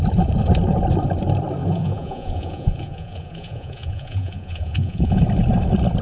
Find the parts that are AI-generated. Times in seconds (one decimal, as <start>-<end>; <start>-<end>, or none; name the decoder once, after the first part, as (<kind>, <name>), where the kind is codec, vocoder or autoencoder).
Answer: 1.6-5.2 (vocoder, Vocos)